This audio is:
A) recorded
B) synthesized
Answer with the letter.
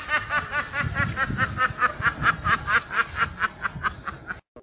A